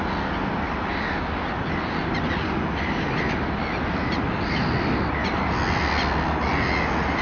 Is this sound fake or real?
real